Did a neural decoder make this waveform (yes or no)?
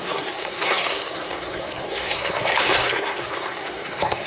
yes